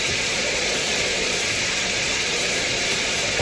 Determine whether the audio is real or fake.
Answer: fake